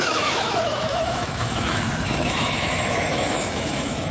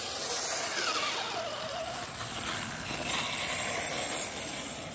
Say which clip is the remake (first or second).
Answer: first